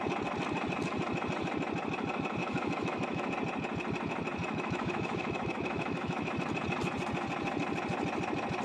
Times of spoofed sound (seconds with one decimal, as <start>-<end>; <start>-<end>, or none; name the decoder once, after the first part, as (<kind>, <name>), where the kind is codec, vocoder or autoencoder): 2.4-3.3 (autoencoder, DAC-VAE); 4.4-6.3